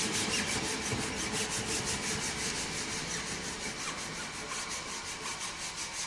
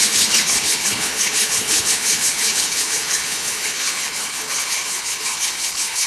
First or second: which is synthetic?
second